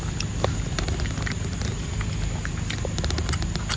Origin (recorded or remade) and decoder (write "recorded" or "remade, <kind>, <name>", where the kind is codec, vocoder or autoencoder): recorded